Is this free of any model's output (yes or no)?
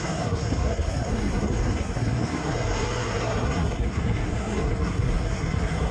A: no